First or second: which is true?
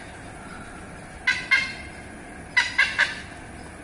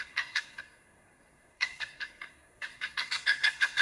first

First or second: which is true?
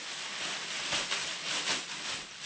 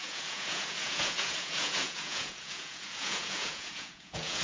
first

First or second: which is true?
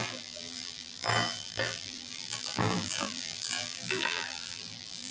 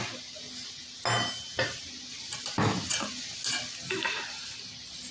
second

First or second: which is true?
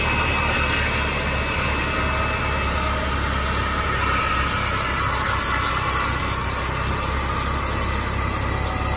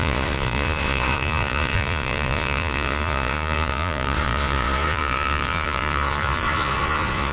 first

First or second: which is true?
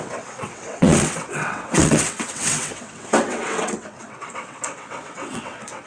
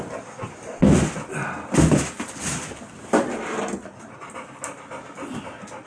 second